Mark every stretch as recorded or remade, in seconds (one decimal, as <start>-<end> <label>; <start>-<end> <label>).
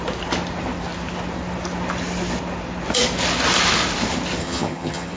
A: 0.0-4.4 recorded; 4.4-5.2 remade